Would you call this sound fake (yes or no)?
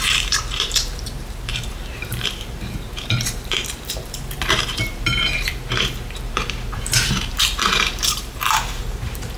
yes